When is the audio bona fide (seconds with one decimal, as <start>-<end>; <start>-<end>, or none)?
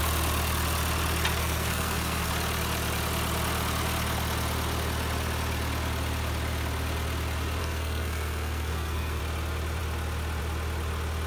0.0-1.4; 2.3-7.6; 9.2-11.3